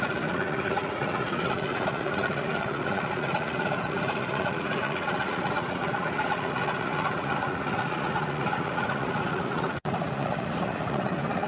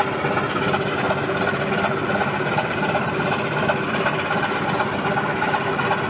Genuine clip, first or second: second